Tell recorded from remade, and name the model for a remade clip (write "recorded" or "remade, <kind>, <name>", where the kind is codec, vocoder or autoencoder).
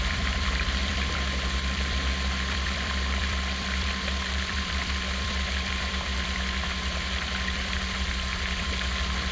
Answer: remade, vocoder, BigVGAN v2